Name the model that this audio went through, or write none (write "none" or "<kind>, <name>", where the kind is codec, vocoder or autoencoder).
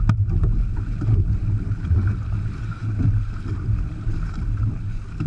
none